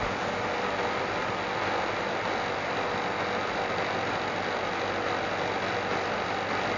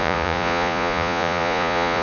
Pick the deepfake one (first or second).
second